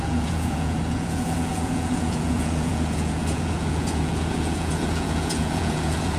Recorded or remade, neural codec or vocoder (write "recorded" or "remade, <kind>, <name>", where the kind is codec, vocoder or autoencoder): remade, vocoder, Vocos